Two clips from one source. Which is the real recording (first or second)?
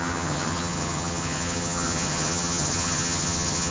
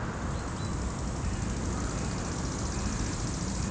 second